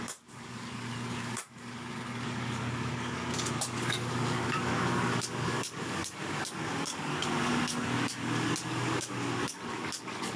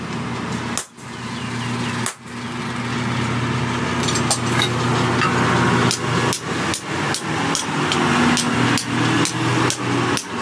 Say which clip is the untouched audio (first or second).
second